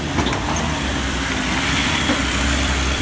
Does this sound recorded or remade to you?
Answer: remade